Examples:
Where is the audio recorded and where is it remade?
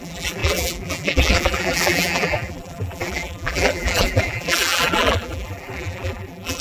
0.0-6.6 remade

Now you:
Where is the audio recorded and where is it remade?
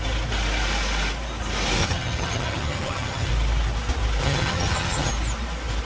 0.0-1.8 recorded; 1.8-3.3 remade; 3.3-4.2 recorded; 4.2-5.1 remade; 5.1-5.8 recorded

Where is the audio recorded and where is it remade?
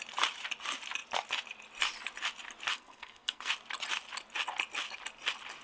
0.0-2.7 recorded; 2.7-3.5 remade; 3.5-5.6 recorded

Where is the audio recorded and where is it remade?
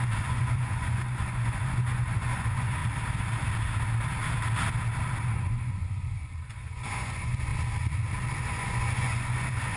0.0-2.8 remade; 2.8-5.4 recorded; 5.4-7.5 remade; 7.5-8.4 recorded; 8.4-9.8 remade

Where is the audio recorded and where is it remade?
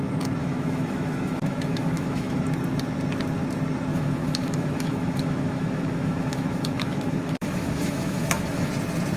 0.0-0.4 recorded; 0.4-2.4 remade; 2.4-3.9 recorded; 3.9-8.7 remade; 8.7-9.2 recorded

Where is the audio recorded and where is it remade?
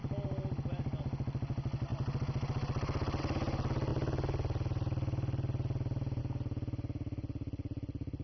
0.0-8.2 recorded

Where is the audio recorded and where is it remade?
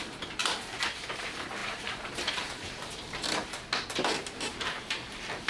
0.0-0.4 remade; 0.4-1.1 recorded; 1.1-3.4 remade; 3.4-4.2 recorded; 4.2-5.5 remade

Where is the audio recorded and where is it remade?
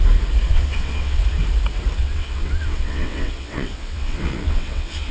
0.0-0.5 recorded; 0.5-1.2 remade; 1.2-2.0 recorded; 2.0-5.1 remade